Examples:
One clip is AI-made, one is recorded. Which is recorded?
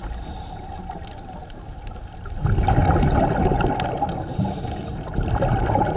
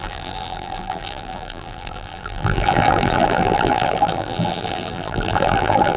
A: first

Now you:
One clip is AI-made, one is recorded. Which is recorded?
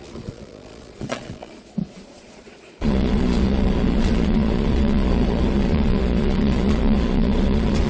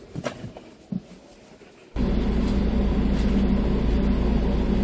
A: second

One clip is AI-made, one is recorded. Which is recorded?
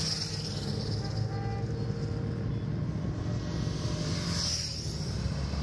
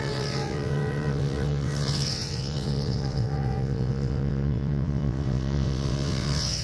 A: first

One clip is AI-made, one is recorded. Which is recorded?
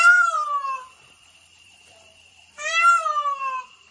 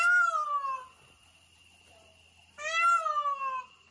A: second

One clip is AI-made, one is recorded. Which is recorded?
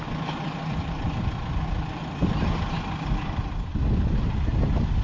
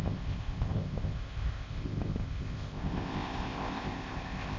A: first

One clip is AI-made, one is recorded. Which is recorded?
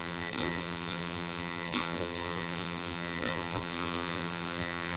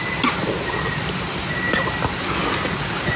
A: second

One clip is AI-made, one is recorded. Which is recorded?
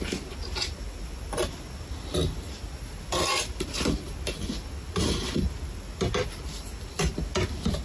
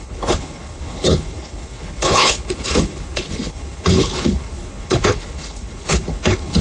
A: first